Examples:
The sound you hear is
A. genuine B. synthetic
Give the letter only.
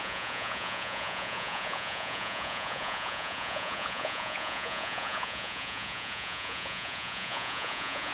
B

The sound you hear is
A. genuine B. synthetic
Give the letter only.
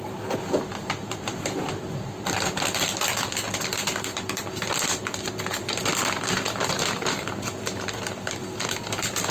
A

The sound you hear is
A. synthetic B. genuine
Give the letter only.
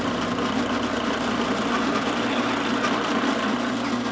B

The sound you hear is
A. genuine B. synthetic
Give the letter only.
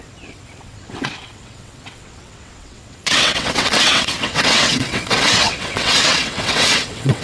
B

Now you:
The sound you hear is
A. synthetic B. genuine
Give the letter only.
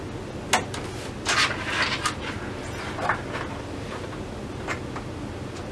B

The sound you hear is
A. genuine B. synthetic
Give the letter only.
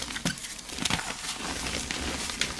A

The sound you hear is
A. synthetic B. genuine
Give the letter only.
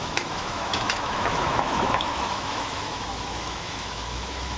A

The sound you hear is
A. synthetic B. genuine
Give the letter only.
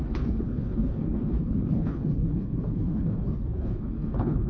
A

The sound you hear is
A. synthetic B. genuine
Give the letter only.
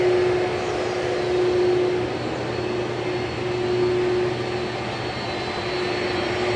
B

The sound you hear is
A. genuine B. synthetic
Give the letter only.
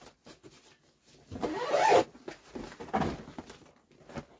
A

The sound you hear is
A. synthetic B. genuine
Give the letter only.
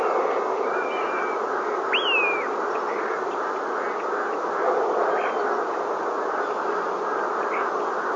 B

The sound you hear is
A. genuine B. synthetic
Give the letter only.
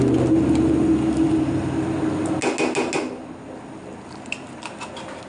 A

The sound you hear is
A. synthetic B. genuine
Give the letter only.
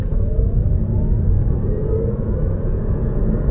A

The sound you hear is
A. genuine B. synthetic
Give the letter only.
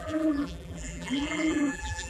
B